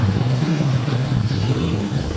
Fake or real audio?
fake